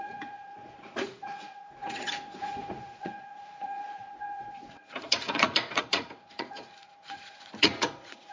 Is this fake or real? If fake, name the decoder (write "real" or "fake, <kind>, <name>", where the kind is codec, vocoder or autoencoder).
fake, vocoder, Vocos